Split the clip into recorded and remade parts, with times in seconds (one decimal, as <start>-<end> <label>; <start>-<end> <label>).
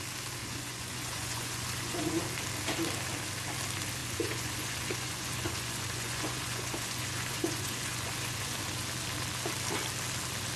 0.0-0.4 recorded; 0.4-2.2 remade; 2.2-4.0 recorded; 4.0-8.6 remade; 8.6-10.6 recorded